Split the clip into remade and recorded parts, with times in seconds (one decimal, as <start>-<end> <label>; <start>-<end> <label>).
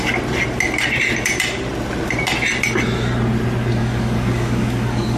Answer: 0.0-3.8 recorded; 3.8-5.2 remade